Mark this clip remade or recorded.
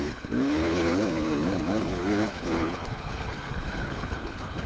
remade